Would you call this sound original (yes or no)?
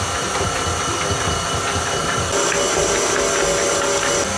yes